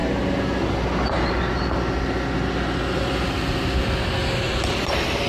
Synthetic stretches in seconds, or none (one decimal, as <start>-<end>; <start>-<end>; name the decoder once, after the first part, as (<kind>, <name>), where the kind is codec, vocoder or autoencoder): none